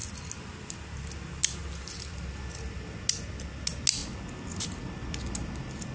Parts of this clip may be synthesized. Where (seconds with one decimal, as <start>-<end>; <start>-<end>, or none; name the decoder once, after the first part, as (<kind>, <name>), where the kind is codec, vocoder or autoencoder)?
none